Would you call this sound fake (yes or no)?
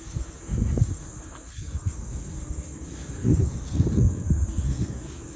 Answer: yes